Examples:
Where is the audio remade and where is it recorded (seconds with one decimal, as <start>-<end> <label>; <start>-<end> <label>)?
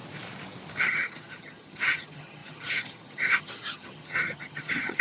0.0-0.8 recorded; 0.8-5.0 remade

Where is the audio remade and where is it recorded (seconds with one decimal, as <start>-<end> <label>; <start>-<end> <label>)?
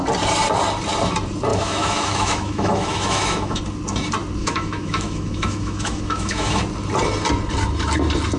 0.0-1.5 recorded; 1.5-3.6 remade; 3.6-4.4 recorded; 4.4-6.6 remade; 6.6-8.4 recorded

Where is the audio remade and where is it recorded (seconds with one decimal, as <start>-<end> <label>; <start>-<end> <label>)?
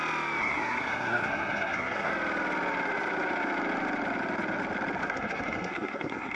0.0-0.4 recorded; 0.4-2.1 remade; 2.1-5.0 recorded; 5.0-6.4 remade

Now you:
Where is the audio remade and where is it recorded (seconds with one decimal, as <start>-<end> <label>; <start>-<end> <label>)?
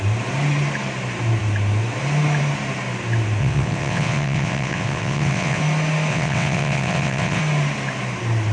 0.0-3.4 recorded; 3.4-5.6 remade; 5.6-6.1 recorded; 6.1-7.4 remade; 7.4-8.5 recorded